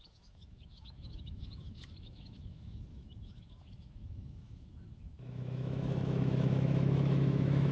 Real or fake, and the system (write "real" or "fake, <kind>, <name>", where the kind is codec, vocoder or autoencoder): fake, autoencoder, DAC-VAE